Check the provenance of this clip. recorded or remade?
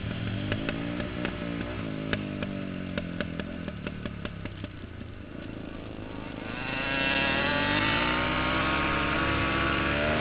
recorded